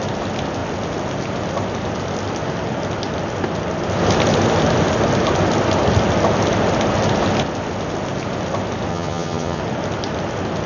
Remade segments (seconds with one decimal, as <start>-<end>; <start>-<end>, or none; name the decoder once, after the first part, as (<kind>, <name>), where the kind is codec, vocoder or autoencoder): 8.9-9.6 (vocoder, HiFi-GAN)